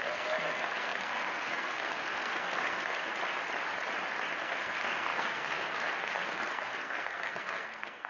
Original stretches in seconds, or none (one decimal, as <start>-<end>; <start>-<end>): 3.1-4.4